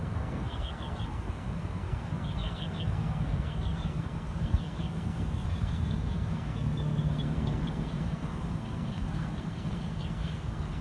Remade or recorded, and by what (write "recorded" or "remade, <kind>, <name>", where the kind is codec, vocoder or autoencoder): remade, codec, SNAC